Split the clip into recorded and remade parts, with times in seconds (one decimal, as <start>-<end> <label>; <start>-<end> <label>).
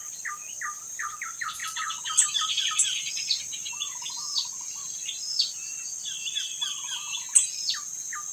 0.0-1.6 recorded; 1.6-2.6 remade; 2.6-4.8 recorded; 4.8-7.2 remade; 7.2-8.3 recorded